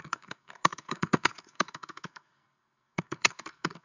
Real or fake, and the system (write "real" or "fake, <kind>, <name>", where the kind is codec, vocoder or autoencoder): fake, codec, SNAC